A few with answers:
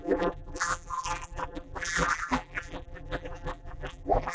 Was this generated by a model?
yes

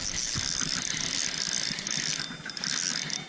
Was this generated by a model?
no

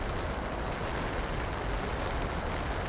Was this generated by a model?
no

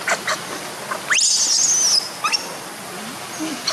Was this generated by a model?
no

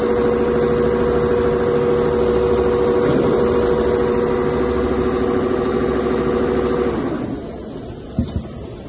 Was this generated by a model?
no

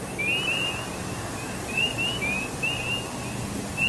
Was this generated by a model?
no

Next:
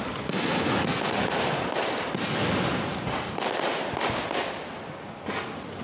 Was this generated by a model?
no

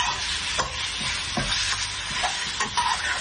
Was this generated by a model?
no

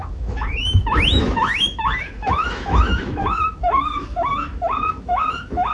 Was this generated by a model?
yes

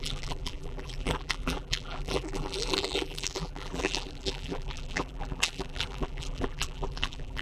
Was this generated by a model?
yes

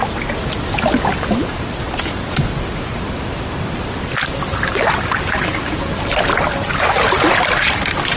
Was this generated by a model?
no